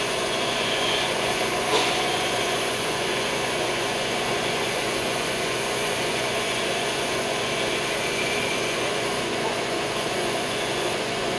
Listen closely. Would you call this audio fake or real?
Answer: fake